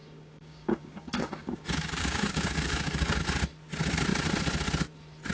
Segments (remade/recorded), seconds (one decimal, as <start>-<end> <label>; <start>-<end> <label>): 0.0-3.2 remade; 3.2-5.3 recorded